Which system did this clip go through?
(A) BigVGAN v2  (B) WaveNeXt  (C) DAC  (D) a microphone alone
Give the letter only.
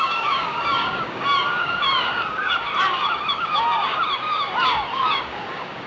C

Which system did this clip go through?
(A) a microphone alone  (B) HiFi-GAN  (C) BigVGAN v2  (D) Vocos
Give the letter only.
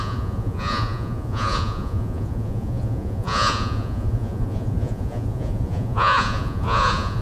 D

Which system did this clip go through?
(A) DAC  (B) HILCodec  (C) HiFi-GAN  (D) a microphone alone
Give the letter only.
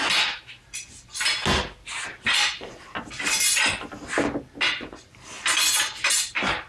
D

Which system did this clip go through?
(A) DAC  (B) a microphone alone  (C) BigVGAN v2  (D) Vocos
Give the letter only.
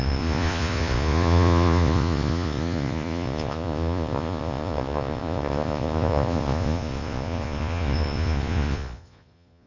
D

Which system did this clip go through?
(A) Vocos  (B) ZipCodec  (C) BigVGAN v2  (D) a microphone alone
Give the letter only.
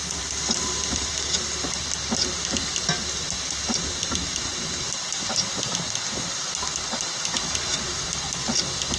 D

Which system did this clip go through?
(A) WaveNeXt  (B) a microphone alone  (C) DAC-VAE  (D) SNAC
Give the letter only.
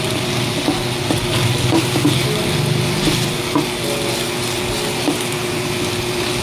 B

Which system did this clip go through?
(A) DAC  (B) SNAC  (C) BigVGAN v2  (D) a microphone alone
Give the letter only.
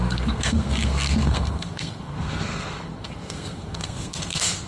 B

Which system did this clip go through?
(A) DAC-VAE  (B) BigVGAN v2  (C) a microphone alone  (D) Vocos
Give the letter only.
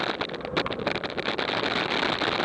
C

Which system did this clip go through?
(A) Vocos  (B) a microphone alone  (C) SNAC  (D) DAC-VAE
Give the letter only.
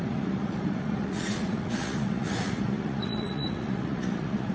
A